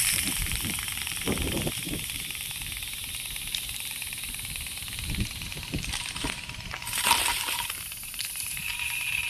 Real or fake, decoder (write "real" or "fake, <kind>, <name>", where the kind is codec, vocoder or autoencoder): fake, vocoder, BigVGAN v2